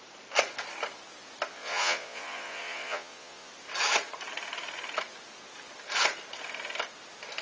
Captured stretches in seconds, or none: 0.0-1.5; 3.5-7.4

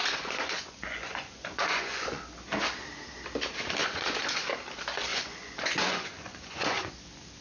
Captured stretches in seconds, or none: 2.2-3.8; 4.5-5.1; 6.9-7.4

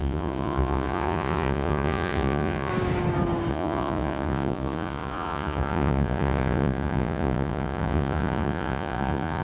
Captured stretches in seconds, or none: 2.7-3.5

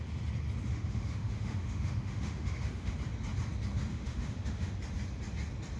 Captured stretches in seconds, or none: 0.0-0.7; 2.9-3.9; 4.7-5.8

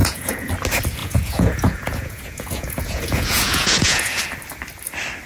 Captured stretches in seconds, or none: 0.5-1.0; 4.2-5.3

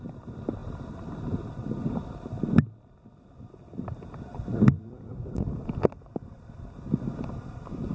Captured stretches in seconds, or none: none